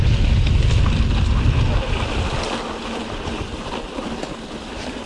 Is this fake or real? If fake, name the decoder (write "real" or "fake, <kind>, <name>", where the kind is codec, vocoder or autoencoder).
real